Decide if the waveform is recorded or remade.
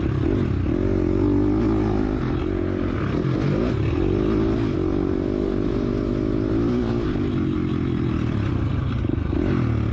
recorded